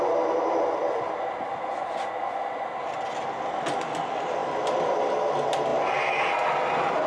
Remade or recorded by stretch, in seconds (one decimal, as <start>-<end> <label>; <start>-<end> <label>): 0.0-7.1 recorded